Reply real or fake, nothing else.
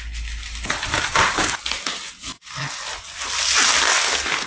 real